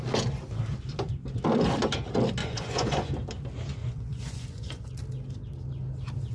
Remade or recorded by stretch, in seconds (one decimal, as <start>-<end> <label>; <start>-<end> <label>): 0.0-2.4 recorded; 2.4-3.1 remade; 3.1-3.8 recorded; 3.8-4.9 remade; 4.9-6.3 recorded